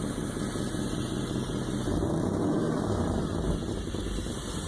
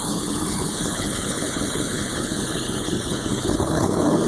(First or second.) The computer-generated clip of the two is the second